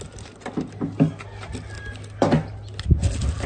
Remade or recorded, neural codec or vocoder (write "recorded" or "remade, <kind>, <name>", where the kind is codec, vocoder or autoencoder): recorded